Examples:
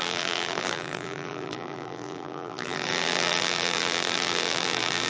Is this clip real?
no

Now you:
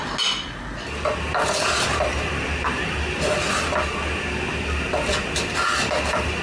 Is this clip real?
yes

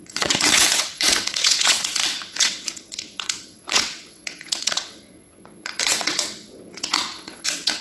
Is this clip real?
no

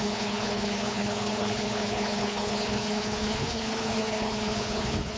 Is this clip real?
no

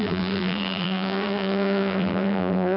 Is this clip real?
no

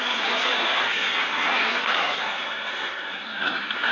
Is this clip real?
no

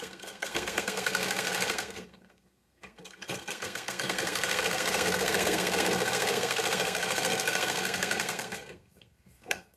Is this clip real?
no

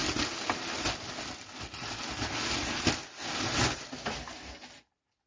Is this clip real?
yes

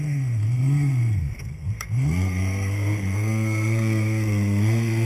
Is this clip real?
no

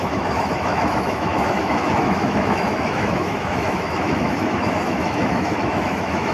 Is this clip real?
no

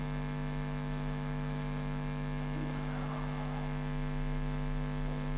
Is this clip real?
no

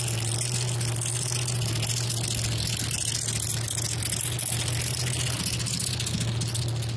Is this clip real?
yes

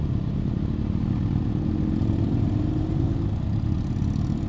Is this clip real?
yes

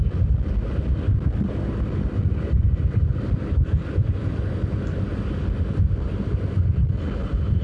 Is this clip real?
yes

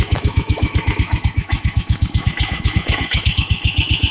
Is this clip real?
no